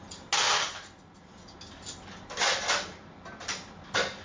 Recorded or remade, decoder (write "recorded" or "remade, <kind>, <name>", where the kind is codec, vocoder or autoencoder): recorded